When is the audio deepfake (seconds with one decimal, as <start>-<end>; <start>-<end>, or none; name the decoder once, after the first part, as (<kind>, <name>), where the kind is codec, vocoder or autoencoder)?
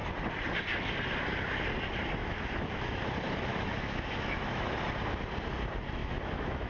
2.2-3.0 (autoencoder, DAC-VAE); 3.5-4.7; 6.0-6.7